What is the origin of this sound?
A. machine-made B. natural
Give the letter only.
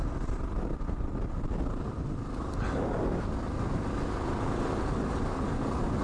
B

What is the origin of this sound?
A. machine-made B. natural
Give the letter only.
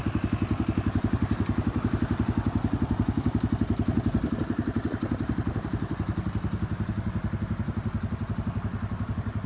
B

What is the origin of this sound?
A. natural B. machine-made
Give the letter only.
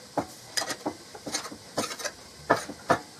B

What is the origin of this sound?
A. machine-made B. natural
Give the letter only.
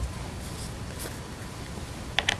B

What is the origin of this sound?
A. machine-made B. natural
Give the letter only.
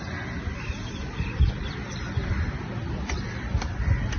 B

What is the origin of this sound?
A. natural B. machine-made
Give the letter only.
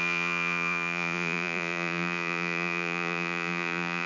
B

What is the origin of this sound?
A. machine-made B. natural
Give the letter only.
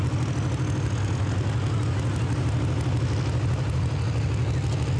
B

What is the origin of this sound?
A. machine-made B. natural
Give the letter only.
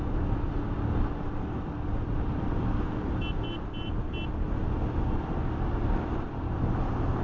B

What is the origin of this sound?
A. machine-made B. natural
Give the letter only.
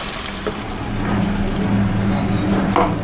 B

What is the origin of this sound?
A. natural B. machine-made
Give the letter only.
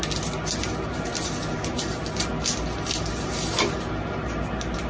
A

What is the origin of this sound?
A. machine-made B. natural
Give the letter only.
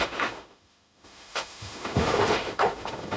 A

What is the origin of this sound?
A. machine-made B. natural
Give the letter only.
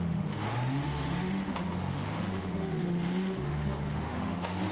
A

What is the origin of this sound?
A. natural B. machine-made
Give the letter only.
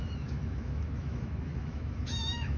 B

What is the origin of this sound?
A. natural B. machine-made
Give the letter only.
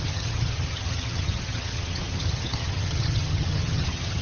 B